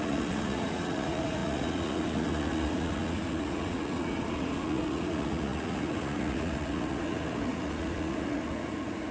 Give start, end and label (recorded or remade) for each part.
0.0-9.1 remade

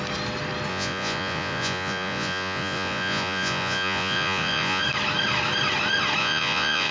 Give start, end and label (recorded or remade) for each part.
0.0-0.7 recorded; 0.7-4.8 remade; 4.8-6.2 recorded; 6.2-6.9 remade

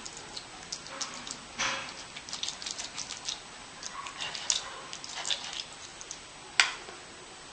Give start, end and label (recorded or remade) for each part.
0.0-7.5 recorded

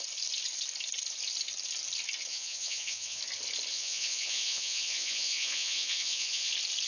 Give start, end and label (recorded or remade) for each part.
0.0-2.3 recorded; 2.3-3.2 remade; 3.2-3.7 recorded; 3.7-6.5 remade; 6.5-6.9 recorded

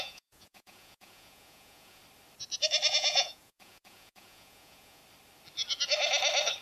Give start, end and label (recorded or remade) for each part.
0.0-2.0 remade; 2.0-2.9 recorded; 2.9-5.0 remade; 5.0-6.6 recorded

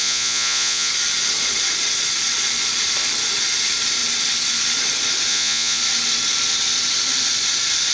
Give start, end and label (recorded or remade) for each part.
0.0-0.9 remade; 0.9-5.3 recorded; 5.3-5.8 remade; 5.8-7.9 recorded

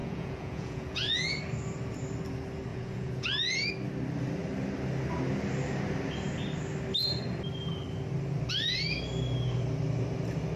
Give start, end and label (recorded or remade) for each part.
0.0-1.4 remade; 1.4-2.7 recorded; 2.7-3.7 remade; 3.7-10.6 recorded

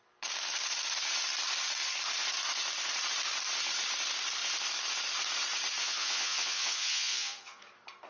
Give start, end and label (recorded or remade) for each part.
0.0-5.8 recorded; 5.8-7.6 remade; 7.6-8.1 recorded